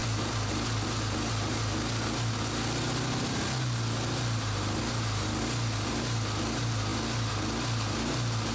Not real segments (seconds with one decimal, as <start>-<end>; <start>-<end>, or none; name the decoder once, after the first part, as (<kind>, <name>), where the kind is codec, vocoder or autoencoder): none